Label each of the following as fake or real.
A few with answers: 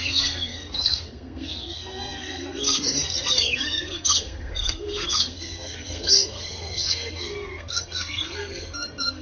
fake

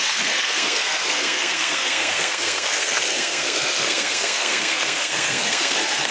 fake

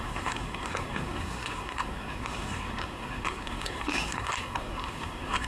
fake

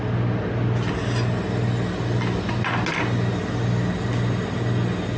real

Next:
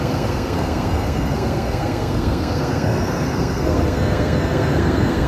fake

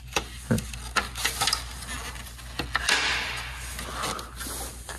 real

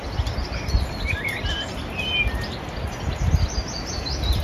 real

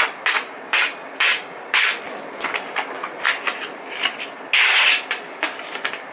real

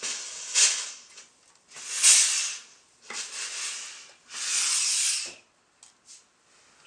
real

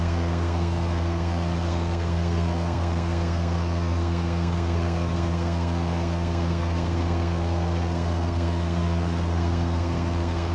fake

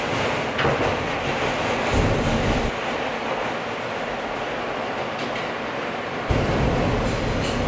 real